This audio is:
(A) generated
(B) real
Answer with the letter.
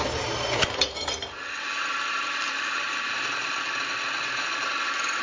B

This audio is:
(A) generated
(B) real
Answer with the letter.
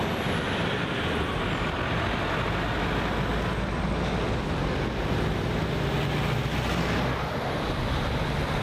B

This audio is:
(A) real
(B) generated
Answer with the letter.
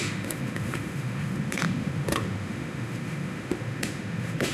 B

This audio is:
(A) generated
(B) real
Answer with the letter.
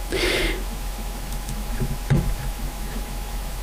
A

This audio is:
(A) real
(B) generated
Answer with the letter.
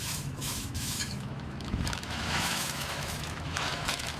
B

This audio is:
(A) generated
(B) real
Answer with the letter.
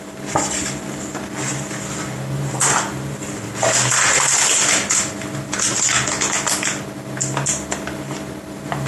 B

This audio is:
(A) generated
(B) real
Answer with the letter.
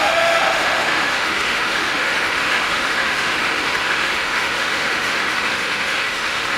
A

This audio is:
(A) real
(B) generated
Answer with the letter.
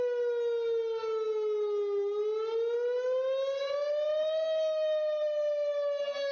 A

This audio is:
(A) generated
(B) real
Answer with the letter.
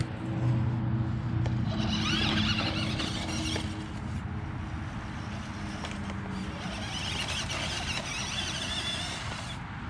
B